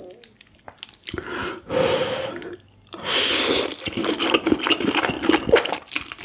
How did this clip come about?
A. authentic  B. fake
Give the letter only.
A